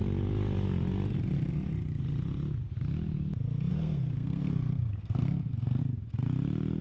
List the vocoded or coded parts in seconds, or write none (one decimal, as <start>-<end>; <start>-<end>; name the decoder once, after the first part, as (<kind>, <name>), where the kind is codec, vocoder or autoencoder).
3.7-5.8 (codec, SNAC)